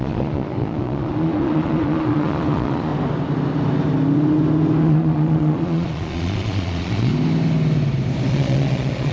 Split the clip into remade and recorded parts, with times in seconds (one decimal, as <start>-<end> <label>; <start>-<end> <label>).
0.0-2.9 remade; 2.9-4.8 recorded; 4.8-7.1 remade; 7.1-8.3 recorded; 8.3-9.1 remade